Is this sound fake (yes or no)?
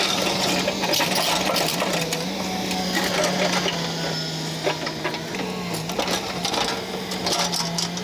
no